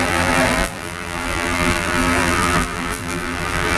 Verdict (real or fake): fake